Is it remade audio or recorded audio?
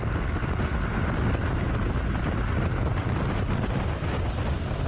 recorded